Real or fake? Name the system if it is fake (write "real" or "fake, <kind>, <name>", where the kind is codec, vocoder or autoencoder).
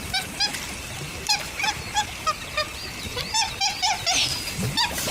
real